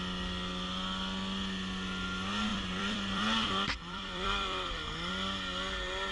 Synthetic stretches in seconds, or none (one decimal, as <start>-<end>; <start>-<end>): 2.5-5.1